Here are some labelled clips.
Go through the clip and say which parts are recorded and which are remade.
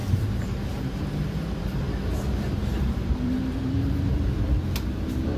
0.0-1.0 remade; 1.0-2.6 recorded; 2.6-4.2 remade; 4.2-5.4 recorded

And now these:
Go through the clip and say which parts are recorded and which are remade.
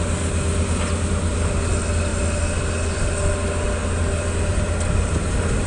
0.0-5.7 recorded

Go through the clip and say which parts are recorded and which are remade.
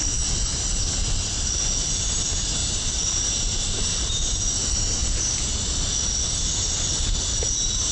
0.0-2.6 recorded; 2.6-4.2 remade; 4.2-7.9 recorded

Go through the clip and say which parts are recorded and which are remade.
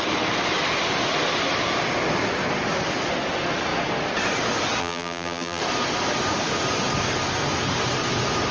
0.0-4.8 recorded; 4.8-5.6 remade; 5.6-8.5 recorded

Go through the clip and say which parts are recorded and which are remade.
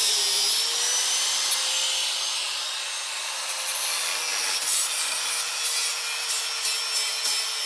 0.0-1.5 remade; 1.5-4.3 recorded; 4.3-4.8 remade; 4.8-7.7 recorded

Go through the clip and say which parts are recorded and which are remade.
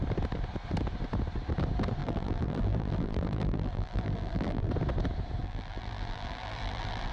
0.0-2.0 recorded; 2.0-4.7 remade; 4.7-5.4 recorded; 5.4-7.1 remade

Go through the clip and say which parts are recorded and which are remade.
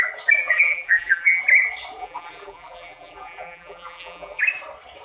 0.0-0.4 recorded; 0.4-1.4 remade; 1.4-2.0 recorded; 2.0-4.4 remade; 4.4-5.0 recorded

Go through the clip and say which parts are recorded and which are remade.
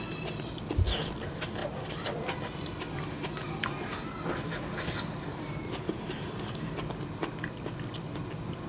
0.0-5.3 recorded; 5.3-6.7 remade; 6.7-8.7 recorded